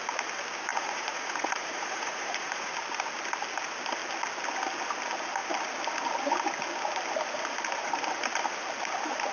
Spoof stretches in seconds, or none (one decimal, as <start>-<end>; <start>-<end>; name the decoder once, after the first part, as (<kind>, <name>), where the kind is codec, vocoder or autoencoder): 0.7-2.7 (vocoder, Vocos)

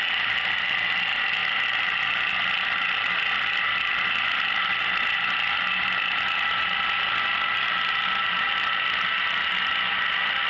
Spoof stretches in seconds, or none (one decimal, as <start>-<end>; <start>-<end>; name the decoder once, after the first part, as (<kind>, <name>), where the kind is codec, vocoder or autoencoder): none

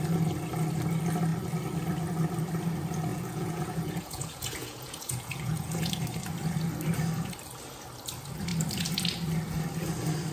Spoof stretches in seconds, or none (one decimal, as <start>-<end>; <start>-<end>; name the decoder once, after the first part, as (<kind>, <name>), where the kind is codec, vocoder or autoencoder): 3.1-5.9 (vocoder, Vocos)

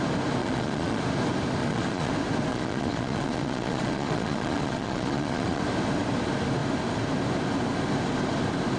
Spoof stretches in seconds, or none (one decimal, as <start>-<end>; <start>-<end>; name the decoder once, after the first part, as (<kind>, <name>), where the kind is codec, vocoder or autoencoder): 0.4-1.0 (vocoder, Vocos); 1.6-2.1; 2.5-5.6

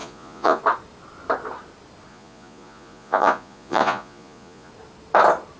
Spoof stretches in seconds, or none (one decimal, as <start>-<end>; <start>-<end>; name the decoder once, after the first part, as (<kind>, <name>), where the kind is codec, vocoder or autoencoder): 0.0-0.6 (vocoder, Vocos); 2.1-4.7

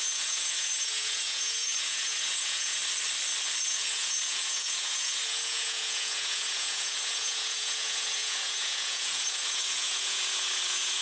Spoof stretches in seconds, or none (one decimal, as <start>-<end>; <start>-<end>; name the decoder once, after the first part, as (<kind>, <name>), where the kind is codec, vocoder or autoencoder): 0.0-2.8 (vocoder, Vocos); 3.6-11.0